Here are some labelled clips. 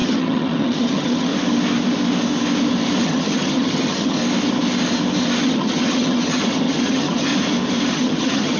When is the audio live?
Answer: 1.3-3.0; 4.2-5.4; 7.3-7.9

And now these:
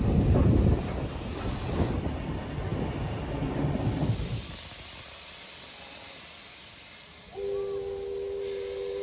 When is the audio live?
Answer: 0.0-9.0

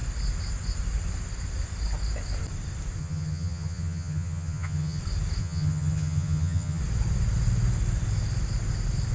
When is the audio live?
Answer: 0.0-3.0; 5.0-5.4; 6.8-9.1

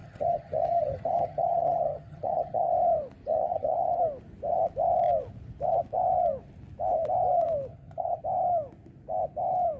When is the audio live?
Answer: 2.7-3.3; 4.0-7.7; 8.2-9.8

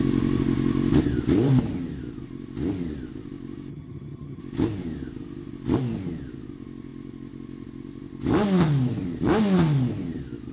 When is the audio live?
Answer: 0.0-3.7; 4.4-10.5